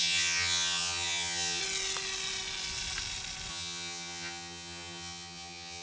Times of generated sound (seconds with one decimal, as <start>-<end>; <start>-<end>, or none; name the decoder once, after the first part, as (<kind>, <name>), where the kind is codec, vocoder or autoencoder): 0.0-1.6 (vocoder, HiFi-GAN); 3.5-5.8